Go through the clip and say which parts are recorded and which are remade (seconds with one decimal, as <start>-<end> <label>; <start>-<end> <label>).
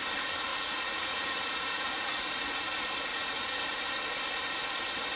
0.0-0.5 recorded; 0.5-2.3 remade; 2.3-3.1 recorded; 3.1-3.6 remade; 3.6-5.2 recorded